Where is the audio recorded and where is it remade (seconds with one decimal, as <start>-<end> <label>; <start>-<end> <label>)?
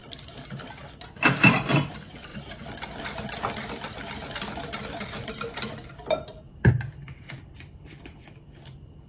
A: 0.0-1.1 recorded; 1.1-9.1 remade